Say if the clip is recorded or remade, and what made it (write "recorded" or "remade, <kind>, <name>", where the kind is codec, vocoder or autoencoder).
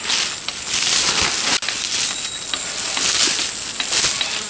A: recorded